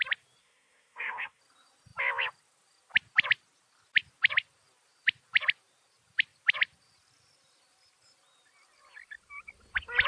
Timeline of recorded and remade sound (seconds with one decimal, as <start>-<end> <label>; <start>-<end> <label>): 0.0-0.4 recorded; 0.4-1.4 remade; 1.4-10.1 recorded